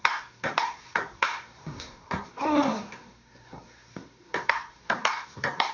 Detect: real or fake fake